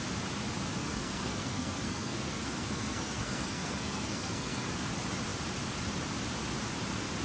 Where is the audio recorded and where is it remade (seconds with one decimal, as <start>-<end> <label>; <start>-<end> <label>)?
0.0-0.8 recorded; 0.8-4.7 remade; 4.7-7.2 recorded